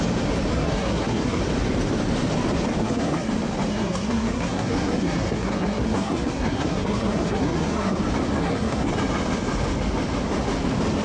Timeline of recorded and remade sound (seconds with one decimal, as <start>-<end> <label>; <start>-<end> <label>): 0.0-0.5 recorded; 0.5-1.4 remade; 1.4-2.8 recorded; 2.8-3.3 remade; 3.3-3.7 recorded; 3.7-8.0 remade; 8.0-8.4 recorded; 8.4-8.9 remade; 8.9-11.0 recorded